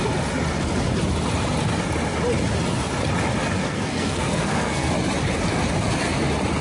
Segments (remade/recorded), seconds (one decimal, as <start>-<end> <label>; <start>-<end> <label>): 0.0-3.6 recorded; 3.6-4.9 remade; 4.9-6.6 recorded